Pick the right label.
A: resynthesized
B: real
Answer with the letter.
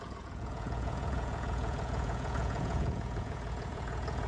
A